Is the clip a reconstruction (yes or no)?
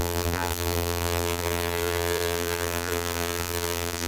yes